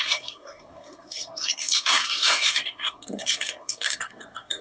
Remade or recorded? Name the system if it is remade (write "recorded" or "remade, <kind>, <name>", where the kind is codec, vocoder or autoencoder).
remade, codec, SNAC